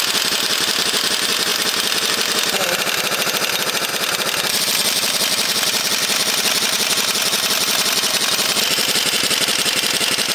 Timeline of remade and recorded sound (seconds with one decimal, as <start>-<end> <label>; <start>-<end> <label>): 0.0-10.3 recorded